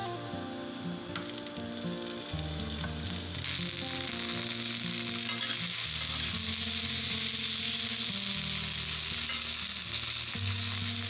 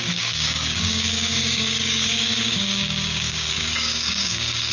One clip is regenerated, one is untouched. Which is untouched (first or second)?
first